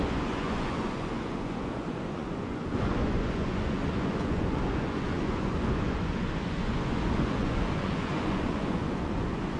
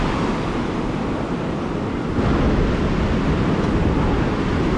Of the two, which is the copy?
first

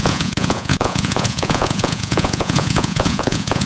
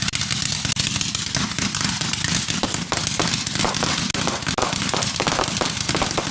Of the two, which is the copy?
first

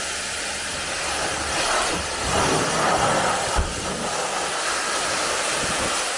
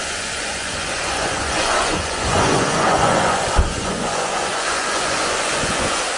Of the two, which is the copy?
second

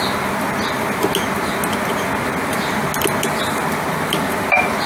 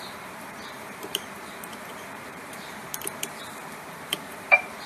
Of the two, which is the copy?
second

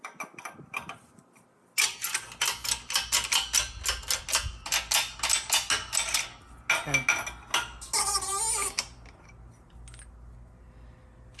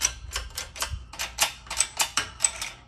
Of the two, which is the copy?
second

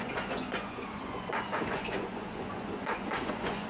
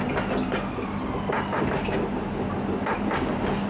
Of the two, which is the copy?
first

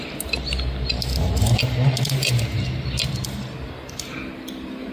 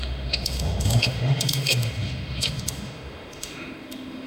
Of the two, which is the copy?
second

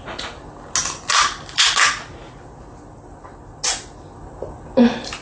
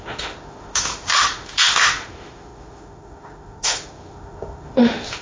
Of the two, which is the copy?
second